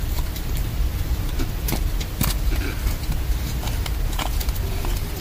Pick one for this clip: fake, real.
real